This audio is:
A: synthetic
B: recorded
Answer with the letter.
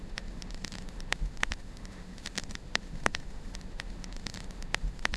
A